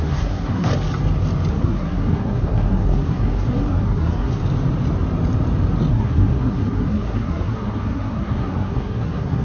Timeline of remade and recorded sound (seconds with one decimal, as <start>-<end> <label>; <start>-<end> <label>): 0.0-0.7 remade; 0.7-1.5 recorded; 1.5-4.4 remade; 4.4-5.9 recorded; 5.9-9.4 remade